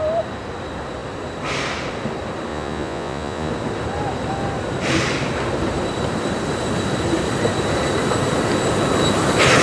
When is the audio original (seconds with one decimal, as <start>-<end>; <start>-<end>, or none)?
0.0-2.5; 3.5-9.6